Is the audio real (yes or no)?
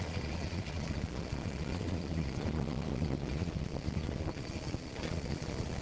no